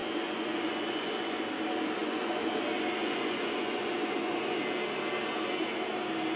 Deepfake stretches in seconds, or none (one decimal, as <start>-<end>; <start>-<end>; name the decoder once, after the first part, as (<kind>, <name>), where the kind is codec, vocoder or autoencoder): 0.0-1.4 (vocoder, Vocos); 2.0-2.5; 3.0-4.6